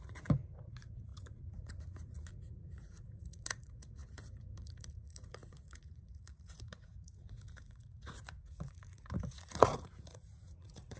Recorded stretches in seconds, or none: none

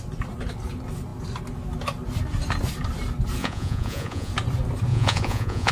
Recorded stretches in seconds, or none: 0.0-3.4; 4.3-4.9

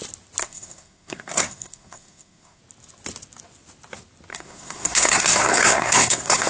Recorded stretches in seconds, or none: 0.0-0.4; 2.6-4.3

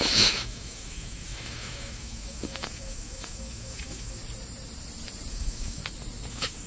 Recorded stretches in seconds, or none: 4.2-5.3; 5.8-6.3

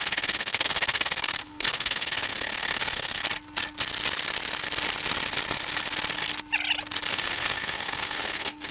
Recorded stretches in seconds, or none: 3.2-7.1